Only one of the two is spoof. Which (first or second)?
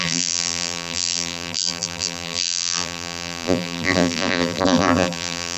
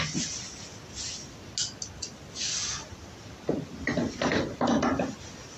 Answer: first